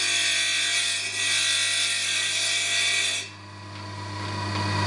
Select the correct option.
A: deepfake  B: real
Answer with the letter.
B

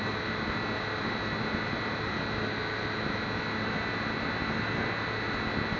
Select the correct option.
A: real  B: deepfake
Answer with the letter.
A